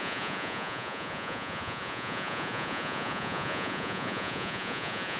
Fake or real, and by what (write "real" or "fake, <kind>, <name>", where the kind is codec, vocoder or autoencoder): fake, vocoder, Vocos